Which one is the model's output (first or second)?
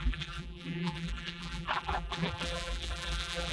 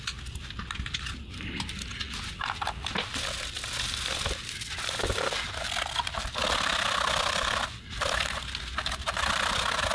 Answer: first